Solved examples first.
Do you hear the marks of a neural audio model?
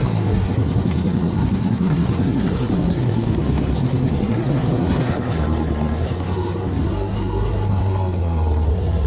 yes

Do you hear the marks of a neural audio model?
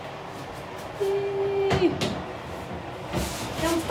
no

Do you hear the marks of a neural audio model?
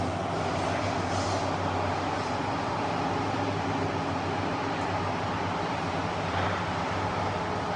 no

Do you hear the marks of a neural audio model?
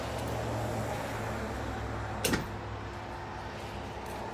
no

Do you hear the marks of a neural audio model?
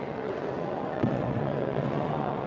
yes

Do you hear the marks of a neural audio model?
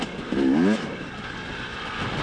no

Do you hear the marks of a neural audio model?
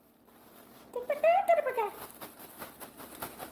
no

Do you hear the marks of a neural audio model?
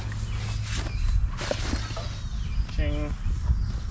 no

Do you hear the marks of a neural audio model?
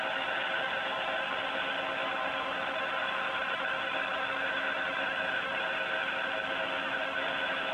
no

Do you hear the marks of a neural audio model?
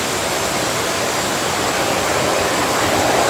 no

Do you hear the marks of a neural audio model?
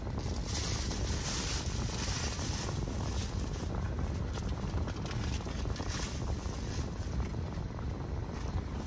no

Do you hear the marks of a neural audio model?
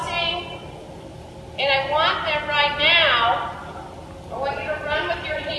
no